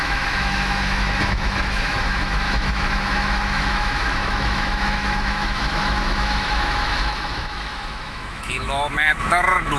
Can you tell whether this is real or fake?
fake